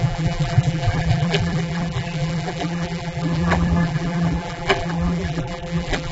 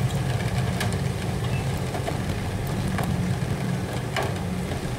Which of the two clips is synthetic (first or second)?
first